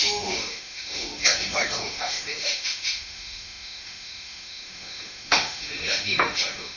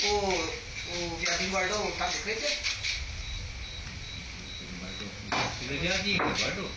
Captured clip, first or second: second